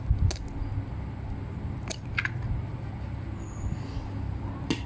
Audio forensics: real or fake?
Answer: real